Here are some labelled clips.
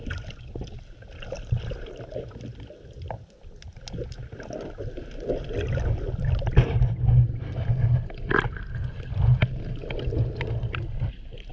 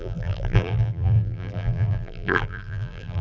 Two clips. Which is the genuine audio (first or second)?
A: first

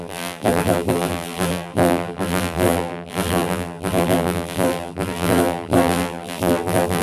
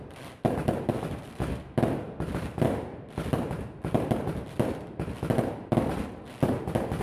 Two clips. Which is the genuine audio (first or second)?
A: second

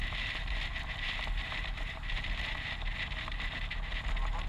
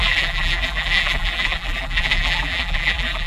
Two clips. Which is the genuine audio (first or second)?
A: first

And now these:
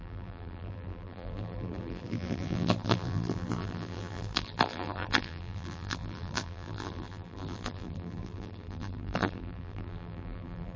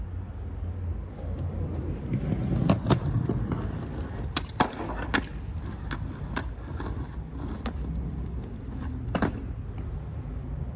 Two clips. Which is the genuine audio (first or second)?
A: second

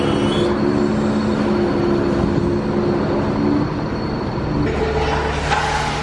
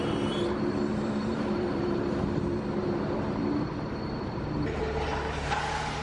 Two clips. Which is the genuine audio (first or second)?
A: first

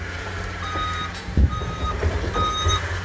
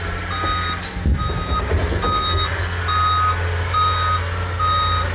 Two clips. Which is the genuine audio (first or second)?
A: second